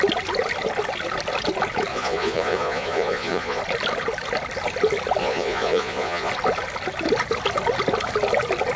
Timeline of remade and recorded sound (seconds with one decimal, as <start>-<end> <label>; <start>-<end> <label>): 0.0-1.9 recorded; 1.9-3.6 remade; 3.6-5.2 recorded; 5.2-6.3 remade; 6.3-8.8 recorded